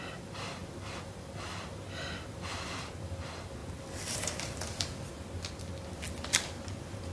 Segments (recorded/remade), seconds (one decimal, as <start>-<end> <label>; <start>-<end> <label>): 0.0-3.6 recorded; 3.6-4.7 remade; 4.7-7.1 recorded